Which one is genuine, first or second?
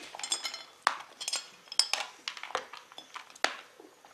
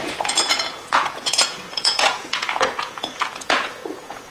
first